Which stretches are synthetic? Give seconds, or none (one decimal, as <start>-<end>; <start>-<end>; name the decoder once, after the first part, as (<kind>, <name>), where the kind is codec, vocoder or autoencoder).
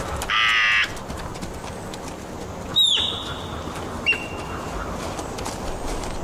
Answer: none